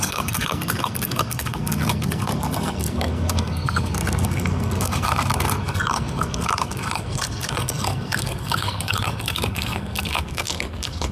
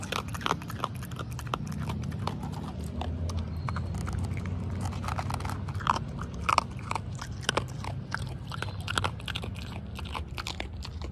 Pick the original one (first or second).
second